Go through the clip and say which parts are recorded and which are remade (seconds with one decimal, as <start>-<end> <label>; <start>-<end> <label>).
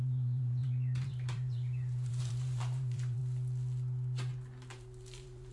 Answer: 0.0-3.2 remade; 3.2-4.7 recorded; 4.7-5.5 remade